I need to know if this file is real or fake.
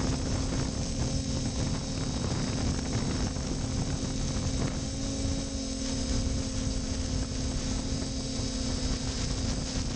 real